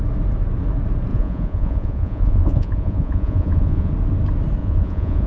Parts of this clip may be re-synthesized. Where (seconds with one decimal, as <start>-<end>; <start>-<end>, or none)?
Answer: 1.1-3.9; 4.6-5.3